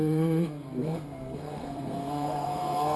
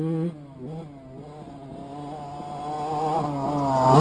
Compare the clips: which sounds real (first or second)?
second